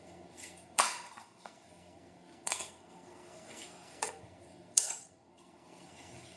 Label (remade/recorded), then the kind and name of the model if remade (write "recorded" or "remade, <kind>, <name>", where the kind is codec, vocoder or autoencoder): remade, codec, SNAC